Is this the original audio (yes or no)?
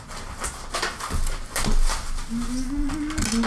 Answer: yes